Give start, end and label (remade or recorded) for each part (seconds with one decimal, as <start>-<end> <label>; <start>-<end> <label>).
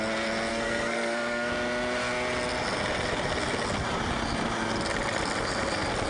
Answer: 0.0-0.5 recorded; 0.5-1.5 remade; 1.5-6.1 recorded